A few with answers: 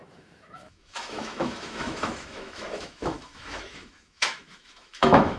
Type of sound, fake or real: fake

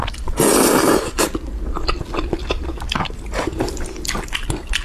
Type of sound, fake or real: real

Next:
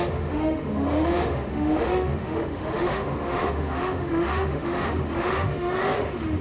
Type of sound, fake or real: fake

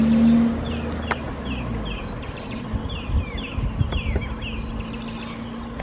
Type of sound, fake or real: real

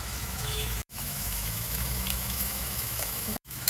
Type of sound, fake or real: fake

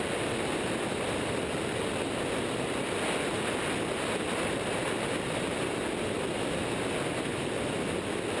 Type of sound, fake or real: real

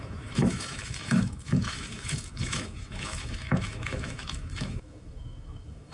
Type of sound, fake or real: fake